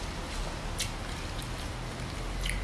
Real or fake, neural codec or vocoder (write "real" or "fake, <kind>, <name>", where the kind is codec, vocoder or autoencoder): real